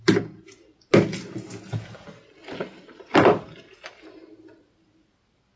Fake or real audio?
real